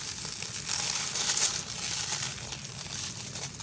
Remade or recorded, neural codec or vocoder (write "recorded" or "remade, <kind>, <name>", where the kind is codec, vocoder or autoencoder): recorded